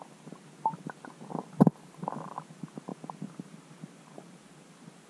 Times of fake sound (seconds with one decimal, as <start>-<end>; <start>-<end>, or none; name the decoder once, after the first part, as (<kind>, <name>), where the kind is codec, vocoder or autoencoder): none